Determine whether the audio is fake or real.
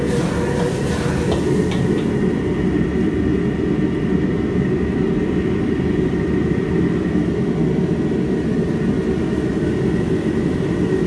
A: real